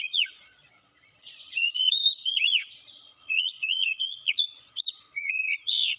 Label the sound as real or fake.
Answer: fake